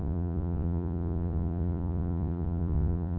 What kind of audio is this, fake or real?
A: fake